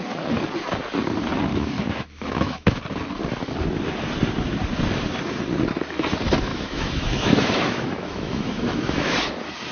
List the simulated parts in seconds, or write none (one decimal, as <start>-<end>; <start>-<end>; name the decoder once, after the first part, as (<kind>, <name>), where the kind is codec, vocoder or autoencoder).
1.5-2.8 (autoencoder, DAC-VAE); 6.5-9.2